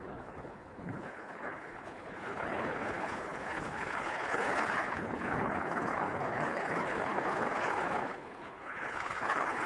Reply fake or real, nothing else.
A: fake